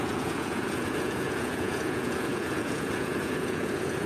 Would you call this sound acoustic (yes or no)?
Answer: no